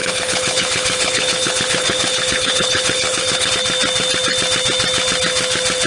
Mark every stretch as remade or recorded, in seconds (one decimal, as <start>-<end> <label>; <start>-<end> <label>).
0.0-3.5 remade; 3.5-5.9 recorded